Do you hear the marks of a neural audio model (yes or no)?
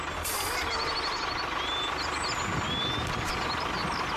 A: no